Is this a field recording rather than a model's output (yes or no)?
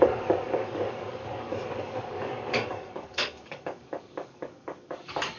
no